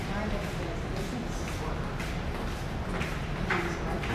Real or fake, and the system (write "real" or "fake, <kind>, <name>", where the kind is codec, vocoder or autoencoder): real